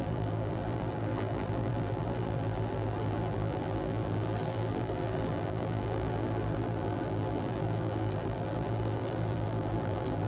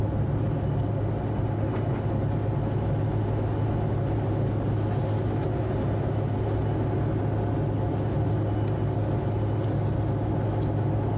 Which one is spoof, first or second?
first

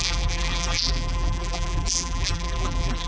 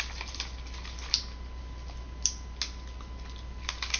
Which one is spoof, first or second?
first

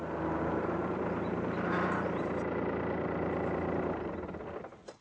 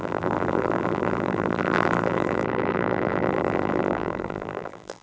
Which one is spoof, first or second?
second